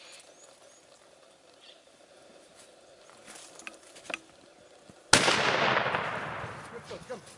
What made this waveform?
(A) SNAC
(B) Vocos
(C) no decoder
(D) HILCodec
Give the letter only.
C